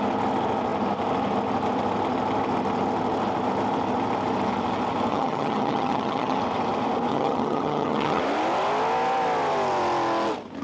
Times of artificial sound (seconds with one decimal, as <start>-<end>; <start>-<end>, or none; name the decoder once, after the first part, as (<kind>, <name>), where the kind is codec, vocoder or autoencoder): 5.1-6.4 (vocoder, HiFi-GAN); 7.1-8.2

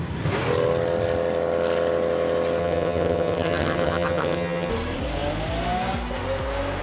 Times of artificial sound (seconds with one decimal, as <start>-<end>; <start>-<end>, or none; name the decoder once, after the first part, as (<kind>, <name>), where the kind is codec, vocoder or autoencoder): 2.6-4.7 (vocoder, HiFi-GAN)

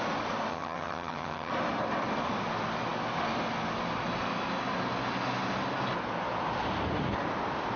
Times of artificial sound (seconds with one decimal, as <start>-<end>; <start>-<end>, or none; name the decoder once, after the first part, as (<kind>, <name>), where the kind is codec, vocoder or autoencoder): 0.5-1.5 (vocoder, HiFi-GAN)

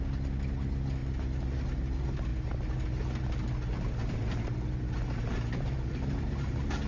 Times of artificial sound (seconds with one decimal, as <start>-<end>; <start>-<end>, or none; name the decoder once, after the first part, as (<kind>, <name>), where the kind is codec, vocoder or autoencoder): none

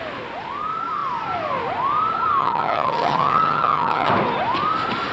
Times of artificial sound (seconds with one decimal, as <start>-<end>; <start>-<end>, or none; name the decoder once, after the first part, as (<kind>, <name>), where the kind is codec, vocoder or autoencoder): 2.4-4.1 (vocoder, HiFi-GAN)